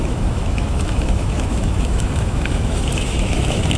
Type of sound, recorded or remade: remade